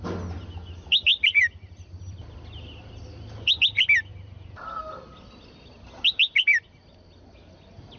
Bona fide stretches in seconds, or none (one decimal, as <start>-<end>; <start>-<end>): 0.0-1.1; 1.9-4.1; 4.8-8.0